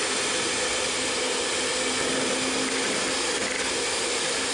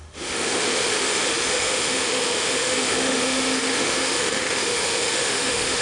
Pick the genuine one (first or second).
first